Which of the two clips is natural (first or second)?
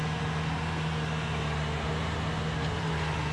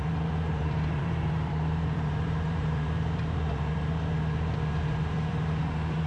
first